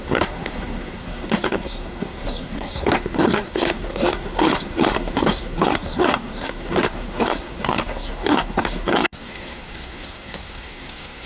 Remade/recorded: remade